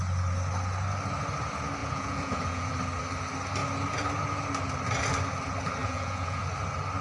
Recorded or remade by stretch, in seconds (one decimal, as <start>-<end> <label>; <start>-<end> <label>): 0.0-1.8 recorded; 1.8-2.7 remade; 2.7-5.8 recorded; 5.8-6.4 remade; 6.4-7.0 recorded